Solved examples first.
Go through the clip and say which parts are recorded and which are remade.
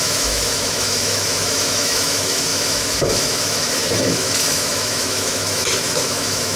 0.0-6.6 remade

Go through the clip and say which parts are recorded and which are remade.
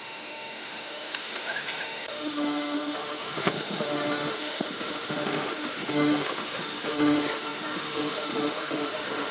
0.0-9.3 remade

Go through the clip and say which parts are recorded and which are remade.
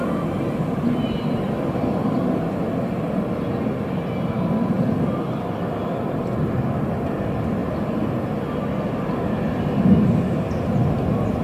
0.0-11.4 recorded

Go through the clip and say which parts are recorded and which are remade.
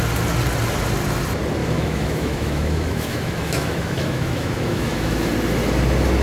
0.0-1.6 recorded; 1.6-5.3 remade; 5.3-6.2 recorded